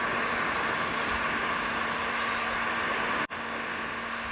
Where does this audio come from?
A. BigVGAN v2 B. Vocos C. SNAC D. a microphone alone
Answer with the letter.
D